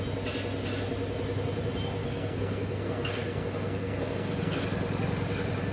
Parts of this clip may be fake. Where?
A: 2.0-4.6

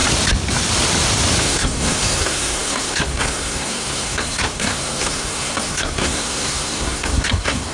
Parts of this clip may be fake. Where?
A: 1.4-7.7

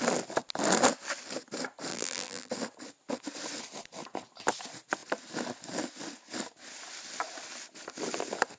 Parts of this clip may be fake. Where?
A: 1.9-2.5

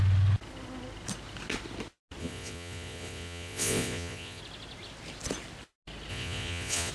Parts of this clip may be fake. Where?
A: 2.2-4.4; 6.1-6.9

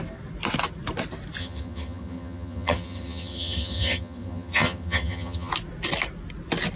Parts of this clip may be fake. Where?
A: 1.4-5.5

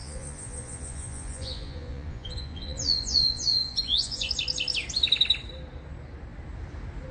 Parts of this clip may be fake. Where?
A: 0.0-4.3

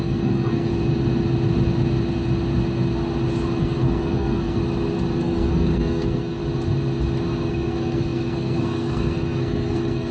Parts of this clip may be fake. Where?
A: 0.0-0.7; 3.6-4.6; 5.2-6.4; 7.5-10.1